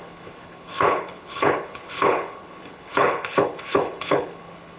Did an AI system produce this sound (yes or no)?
yes